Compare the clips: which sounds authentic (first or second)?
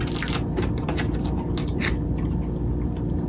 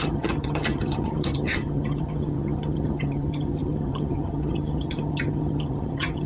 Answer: first